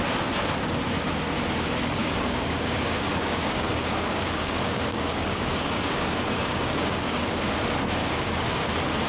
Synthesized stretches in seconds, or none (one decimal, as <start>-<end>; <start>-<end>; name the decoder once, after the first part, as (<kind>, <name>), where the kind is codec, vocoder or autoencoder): 2.0-7.2 (codec, DAC); 8.0-8.7